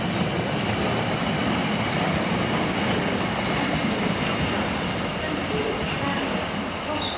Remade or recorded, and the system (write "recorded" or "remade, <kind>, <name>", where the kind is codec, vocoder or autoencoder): recorded